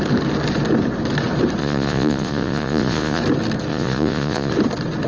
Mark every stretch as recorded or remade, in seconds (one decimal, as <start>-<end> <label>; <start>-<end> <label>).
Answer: 0.0-1.6 recorded; 1.6-3.2 remade; 3.2-3.7 recorded; 3.7-4.5 remade; 4.5-5.1 recorded